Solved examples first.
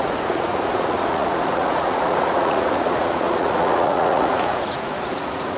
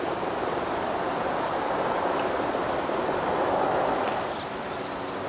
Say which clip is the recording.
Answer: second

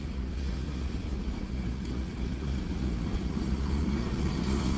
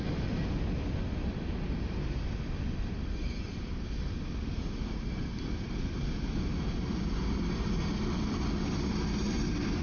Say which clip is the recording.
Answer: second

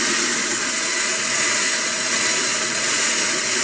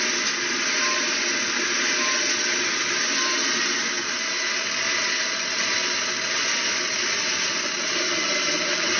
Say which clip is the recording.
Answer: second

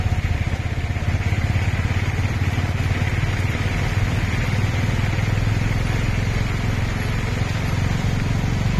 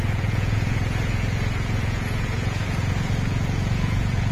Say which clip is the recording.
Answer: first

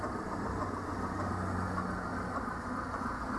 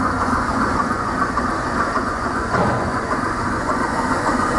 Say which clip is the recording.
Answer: first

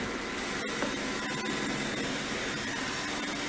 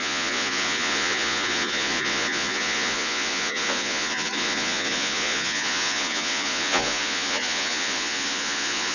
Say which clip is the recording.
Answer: first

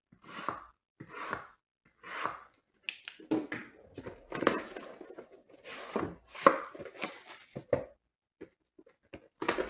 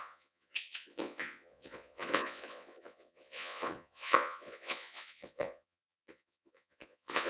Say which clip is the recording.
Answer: first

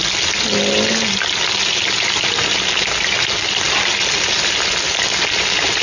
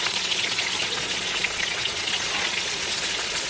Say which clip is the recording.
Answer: first